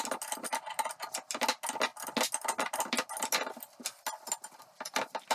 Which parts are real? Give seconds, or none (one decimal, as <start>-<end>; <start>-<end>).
0.0-5.3